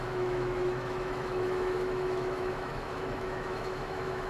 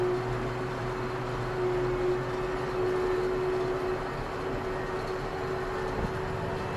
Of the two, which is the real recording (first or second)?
second